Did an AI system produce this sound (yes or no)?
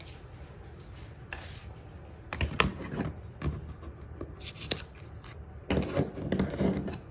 no